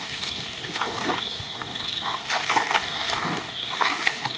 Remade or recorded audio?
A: remade